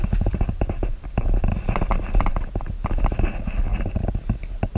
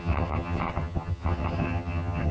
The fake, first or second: second